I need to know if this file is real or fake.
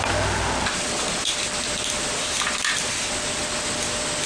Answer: real